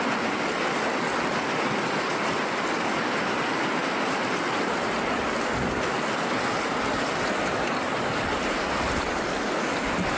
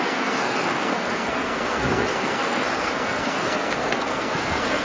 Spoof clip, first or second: second